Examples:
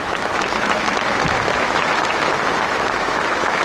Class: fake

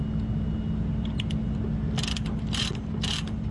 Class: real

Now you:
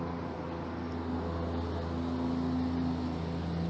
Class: real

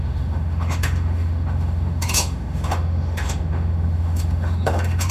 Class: fake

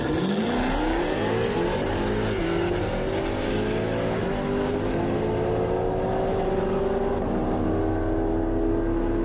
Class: real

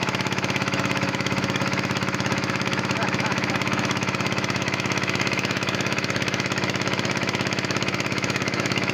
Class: fake